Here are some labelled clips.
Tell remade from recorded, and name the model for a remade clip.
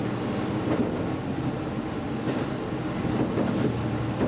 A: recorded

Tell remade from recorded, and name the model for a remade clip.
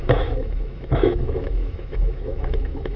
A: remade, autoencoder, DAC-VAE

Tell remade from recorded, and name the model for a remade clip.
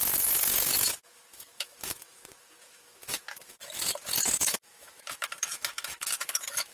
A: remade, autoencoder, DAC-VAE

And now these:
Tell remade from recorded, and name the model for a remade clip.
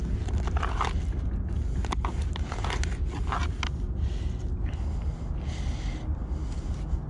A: recorded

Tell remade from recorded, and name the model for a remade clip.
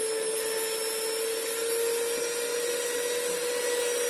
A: recorded